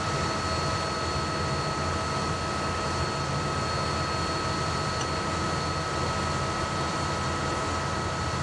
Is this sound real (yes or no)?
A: yes